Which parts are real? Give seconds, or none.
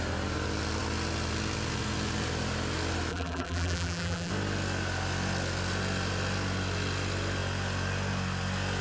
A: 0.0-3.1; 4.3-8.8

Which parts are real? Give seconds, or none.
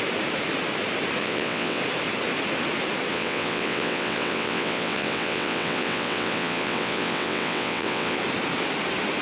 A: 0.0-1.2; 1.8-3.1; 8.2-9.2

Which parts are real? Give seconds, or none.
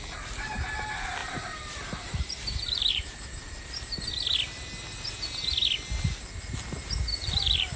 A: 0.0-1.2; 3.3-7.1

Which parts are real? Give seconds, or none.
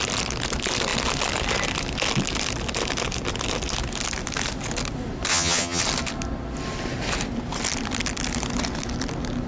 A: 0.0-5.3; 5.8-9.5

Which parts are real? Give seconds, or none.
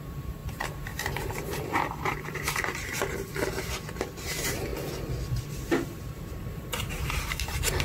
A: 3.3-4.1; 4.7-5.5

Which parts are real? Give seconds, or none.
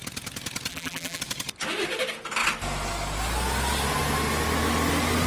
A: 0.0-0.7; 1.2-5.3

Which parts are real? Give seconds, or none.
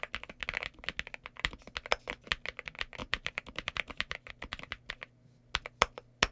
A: 0.0-3.0; 4.3-6.3